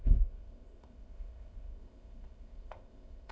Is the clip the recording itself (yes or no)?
no